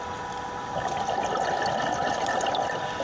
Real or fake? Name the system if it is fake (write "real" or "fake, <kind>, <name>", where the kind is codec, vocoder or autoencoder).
real